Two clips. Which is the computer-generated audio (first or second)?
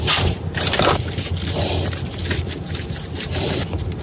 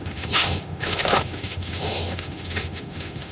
second